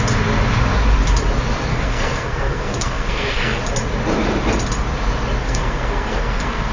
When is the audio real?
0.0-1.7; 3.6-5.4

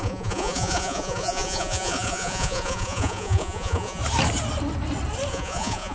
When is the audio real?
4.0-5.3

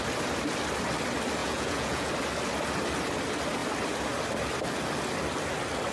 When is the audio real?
0.0-1.4; 2.1-5.9

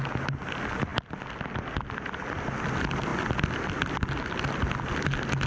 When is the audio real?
0.0-5.5

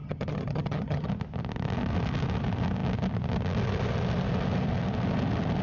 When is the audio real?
1.1-5.6